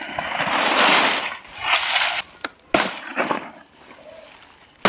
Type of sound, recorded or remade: recorded